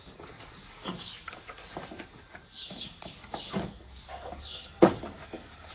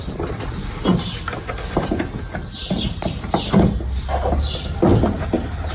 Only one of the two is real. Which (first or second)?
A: second